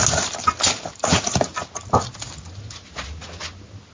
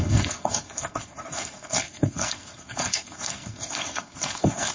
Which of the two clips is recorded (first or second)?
first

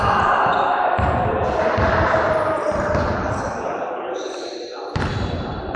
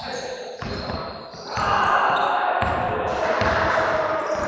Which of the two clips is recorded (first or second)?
second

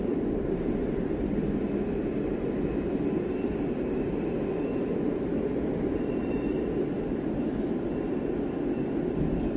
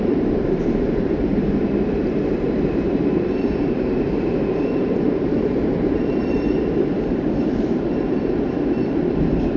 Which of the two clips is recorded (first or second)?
first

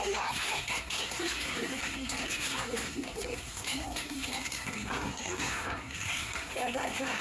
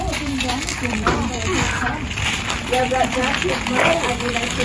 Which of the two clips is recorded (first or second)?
second